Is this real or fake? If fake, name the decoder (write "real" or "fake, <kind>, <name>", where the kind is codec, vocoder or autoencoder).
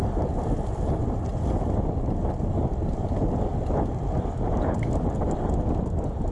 real